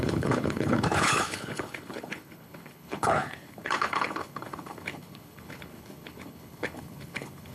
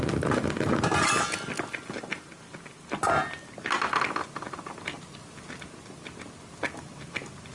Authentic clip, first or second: second